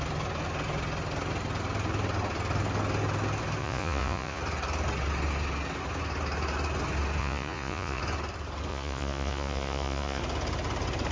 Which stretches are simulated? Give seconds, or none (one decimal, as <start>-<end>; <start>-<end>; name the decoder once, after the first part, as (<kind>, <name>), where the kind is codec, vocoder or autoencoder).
3.6-4.4 (vocoder, Vocos); 7.2-8.0; 8.7-10.2